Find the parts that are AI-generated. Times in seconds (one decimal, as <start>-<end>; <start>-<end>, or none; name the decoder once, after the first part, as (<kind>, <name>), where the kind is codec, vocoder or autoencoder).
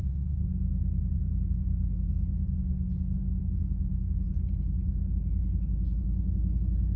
none